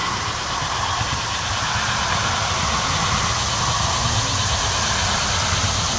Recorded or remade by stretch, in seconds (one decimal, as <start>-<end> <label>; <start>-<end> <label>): 0.0-6.0 recorded

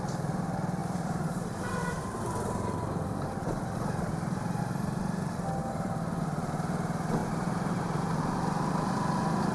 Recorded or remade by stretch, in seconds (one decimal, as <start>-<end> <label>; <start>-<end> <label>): 0.0-0.8 recorded; 0.8-4.6 remade; 4.6-5.6 recorded; 5.6-6.2 remade; 6.2-7.2 recorded; 7.2-8.2 remade; 8.2-9.5 recorded